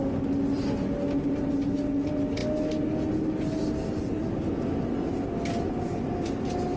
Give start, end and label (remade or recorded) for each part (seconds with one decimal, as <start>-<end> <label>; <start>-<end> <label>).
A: 0.0-6.8 recorded